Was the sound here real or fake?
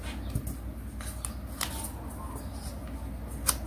real